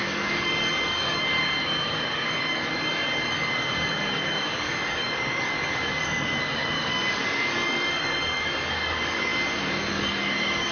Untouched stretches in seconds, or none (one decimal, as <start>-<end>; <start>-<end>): 9.3-9.9